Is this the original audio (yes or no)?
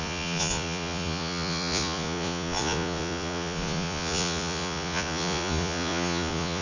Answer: no